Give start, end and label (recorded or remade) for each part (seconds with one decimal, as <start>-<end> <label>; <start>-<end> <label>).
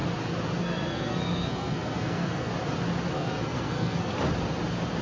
0.0-0.6 recorded; 0.6-2.5 remade; 2.5-3.1 recorded; 3.1-4.1 remade; 4.1-5.0 recorded